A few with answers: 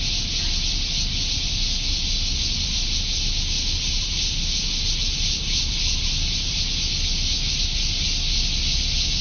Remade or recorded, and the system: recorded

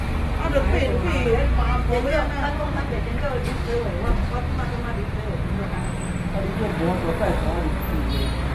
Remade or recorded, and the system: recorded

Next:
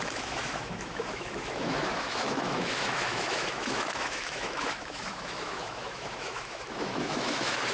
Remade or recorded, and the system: remade, autoencoder, DAC-VAE